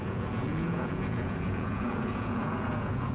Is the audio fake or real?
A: fake